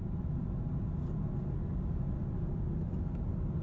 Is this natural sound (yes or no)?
yes